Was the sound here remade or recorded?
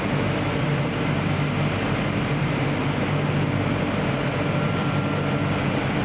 recorded